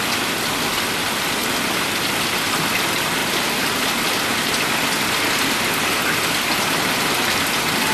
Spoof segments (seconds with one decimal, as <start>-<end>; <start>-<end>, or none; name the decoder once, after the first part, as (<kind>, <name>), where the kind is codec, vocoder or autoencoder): none